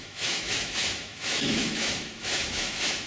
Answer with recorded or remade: remade